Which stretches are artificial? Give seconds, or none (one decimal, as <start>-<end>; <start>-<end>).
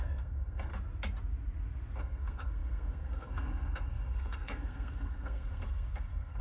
0.0-0.7; 2.0-6.4